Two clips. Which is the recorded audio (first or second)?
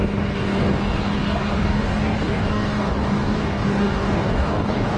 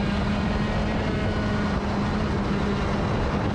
second